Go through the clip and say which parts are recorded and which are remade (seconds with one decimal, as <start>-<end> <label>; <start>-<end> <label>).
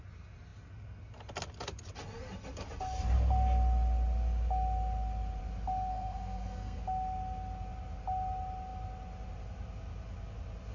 0.0-5.9 recorded; 5.9-6.8 remade; 6.8-10.7 recorded